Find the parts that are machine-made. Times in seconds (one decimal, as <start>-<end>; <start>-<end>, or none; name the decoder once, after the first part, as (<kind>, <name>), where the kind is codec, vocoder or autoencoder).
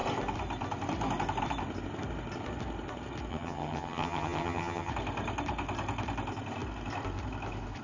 3.3-4.9 (vocoder, HiFi-GAN)